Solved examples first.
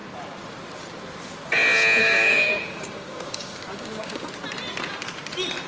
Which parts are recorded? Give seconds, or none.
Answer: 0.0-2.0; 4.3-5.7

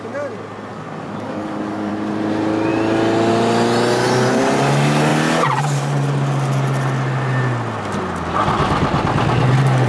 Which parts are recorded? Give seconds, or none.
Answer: 0.0-0.7; 1.9-9.9